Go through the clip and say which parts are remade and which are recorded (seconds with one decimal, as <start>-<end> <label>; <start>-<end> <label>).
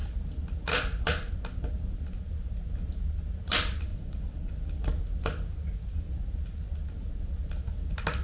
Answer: 0.0-3.9 recorded; 3.9-4.5 remade; 4.5-8.2 recorded